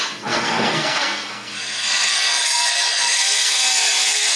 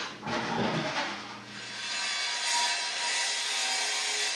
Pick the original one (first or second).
second